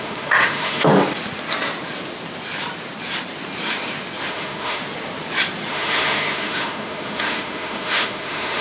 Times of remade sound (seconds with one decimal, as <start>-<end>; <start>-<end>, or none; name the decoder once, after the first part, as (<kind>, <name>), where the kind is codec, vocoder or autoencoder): 0.0-0.9 (autoencoder, DAC-VAE); 4.3-4.8; 5.7-8.6

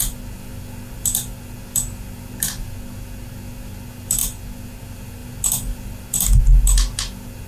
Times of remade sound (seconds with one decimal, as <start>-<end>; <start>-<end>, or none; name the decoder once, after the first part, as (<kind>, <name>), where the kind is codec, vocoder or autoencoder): none

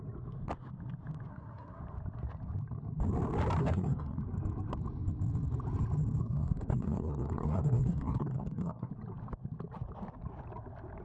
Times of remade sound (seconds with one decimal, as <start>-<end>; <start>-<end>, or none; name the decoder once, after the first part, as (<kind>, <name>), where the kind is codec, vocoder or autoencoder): 1.3-1.8 (codec, SNAC); 3.6-4.2; 6.2-8.9

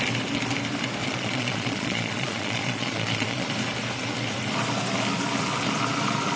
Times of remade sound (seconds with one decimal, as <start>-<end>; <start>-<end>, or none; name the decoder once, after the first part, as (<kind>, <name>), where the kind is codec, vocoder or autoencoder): 1.0-3.5 (vocoder, Vocos)

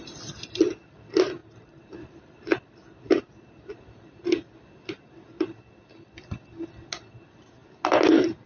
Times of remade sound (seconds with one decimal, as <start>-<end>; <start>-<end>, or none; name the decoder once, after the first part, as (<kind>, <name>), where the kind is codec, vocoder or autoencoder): 1.4-3.8 (vocoder, BigVGAN v2)

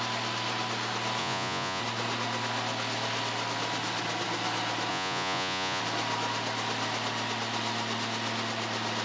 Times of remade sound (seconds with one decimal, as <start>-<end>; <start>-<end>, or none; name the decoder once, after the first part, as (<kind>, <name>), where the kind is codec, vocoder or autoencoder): 1.2-1.8 (vocoder, Vocos); 4.9-5.8

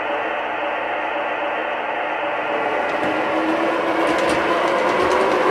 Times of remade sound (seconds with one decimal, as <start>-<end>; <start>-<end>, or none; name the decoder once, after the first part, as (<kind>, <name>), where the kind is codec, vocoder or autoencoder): none

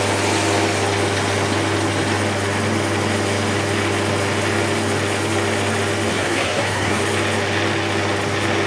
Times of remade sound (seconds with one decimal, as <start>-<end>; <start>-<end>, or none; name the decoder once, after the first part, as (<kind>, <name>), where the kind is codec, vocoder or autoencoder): 6.1-7.0 (codec, SNAC)